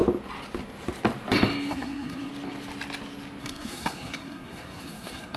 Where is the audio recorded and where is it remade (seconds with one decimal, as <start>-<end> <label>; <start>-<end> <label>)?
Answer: 0.0-1.7 recorded; 1.7-2.3 remade; 2.3-3.4 recorded; 3.4-5.4 remade